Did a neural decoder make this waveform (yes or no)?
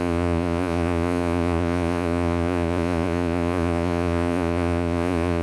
yes